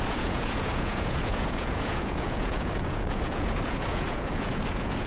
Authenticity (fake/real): fake